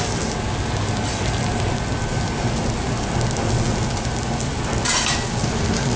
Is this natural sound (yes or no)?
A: yes